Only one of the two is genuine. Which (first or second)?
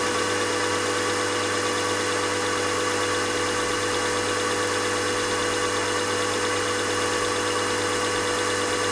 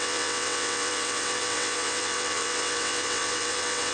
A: first